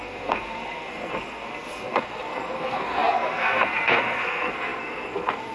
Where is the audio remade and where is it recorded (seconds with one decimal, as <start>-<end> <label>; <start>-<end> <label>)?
0.0-5.5 remade